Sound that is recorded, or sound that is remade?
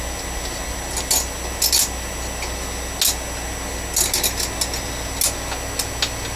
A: recorded